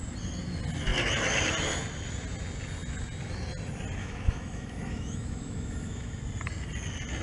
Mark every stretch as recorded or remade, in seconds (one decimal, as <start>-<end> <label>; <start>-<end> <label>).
0.0-4.0 recorded; 4.0-6.2 remade; 6.2-7.2 recorded